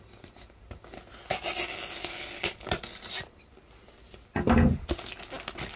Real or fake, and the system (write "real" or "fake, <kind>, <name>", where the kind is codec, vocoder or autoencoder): real